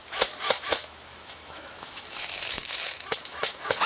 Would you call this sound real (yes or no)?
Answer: no